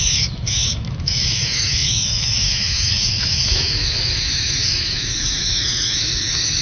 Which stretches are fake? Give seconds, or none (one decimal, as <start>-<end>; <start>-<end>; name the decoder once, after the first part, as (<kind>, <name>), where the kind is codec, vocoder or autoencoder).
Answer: 0.0-6.6 (autoencoder, DAC-VAE)